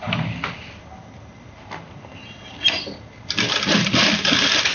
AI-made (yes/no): yes